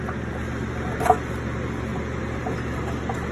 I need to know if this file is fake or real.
real